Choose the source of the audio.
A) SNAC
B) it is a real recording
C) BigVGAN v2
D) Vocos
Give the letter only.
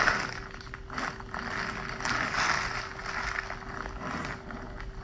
B